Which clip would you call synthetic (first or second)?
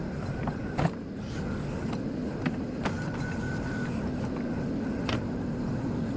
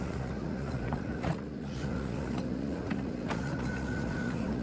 second